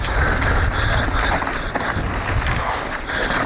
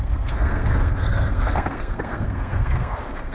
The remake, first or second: second